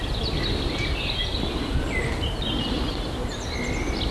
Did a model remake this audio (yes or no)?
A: no